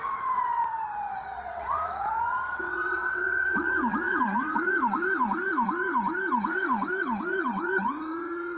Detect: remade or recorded remade